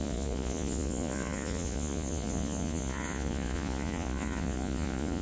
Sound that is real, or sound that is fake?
fake